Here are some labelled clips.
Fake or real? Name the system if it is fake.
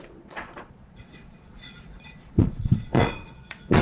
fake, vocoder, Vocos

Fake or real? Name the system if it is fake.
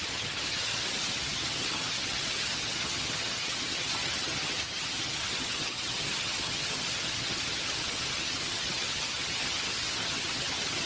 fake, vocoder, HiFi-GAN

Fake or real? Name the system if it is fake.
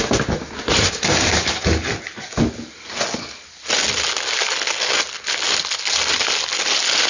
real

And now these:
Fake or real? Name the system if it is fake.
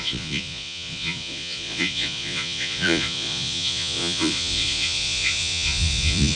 fake, vocoder, Vocos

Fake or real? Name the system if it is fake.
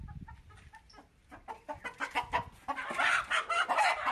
real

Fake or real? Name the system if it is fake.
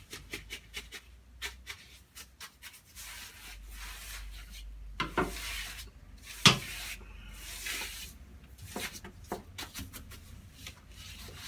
real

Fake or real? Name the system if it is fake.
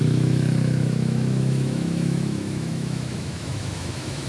fake, autoencoder, DAC-VAE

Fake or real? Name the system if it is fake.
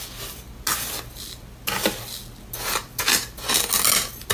real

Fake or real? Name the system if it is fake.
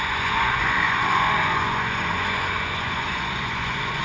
fake, vocoder, Vocos